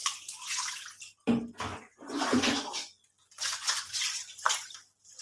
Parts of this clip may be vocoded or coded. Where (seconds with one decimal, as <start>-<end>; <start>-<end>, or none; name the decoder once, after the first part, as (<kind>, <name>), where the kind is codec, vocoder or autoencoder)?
0.0-0.7 (vocoder, Vocos); 1.7-4.5